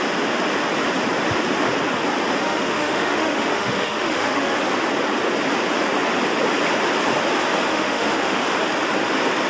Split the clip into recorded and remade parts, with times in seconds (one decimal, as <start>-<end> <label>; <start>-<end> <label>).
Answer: 0.0-2.4 recorded; 2.4-4.6 remade; 4.6-7.7 recorded; 7.7-8.4 remade; 8.4-9.5 recorded